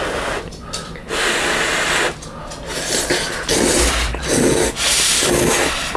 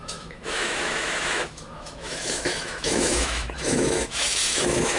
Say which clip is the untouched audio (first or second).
first